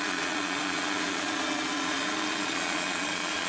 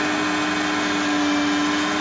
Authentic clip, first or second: second